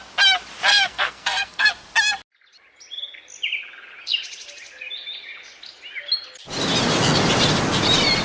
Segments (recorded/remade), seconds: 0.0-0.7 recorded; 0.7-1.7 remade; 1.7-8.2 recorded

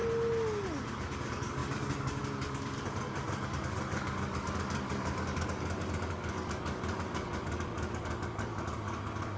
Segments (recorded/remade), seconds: 0.0-0.9 recorded; 0.9-9.4 remade

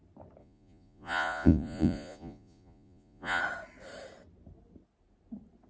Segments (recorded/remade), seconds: 0.0-0.4 recorded; 0.4-3.4 remade; 3.4-5.7 recorded